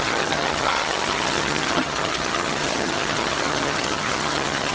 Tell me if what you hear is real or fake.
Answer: fake